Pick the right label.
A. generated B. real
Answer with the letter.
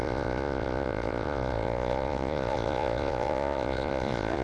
A